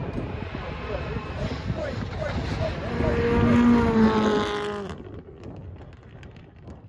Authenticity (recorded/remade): recorded